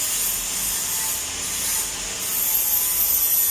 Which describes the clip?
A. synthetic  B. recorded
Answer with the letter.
B